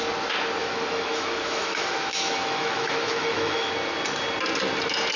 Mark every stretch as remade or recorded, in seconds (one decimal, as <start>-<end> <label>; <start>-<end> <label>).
0.0-0.6 recorded; 0.6-3.7 remade; 3.7-5.2 recorded